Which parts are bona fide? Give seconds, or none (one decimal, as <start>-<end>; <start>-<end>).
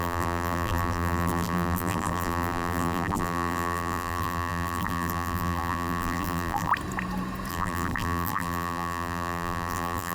6.7-7.5